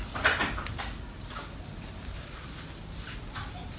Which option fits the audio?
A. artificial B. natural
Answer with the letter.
B